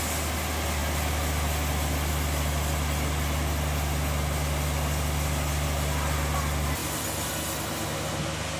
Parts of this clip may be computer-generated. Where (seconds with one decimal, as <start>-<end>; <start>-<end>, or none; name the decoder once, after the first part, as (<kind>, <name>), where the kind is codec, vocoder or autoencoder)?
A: 6.8-7.3 (vocoder, BigVGAN v2)